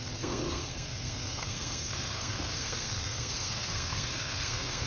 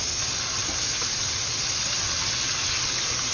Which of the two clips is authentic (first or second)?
second